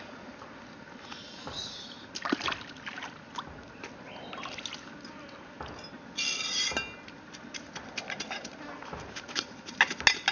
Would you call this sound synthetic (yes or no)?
no